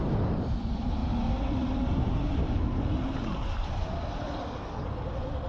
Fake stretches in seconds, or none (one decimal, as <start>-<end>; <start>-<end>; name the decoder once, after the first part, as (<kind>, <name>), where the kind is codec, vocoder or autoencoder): 0.0-1.0 (vocoder, BigVGAN v2); 2.0-3.4